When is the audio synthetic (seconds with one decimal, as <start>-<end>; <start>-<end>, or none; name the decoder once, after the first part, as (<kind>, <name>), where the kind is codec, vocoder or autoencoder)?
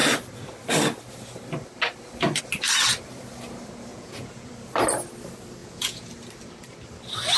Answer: 3.9-4.5 (vocoder, Vocos); 5.6-6.1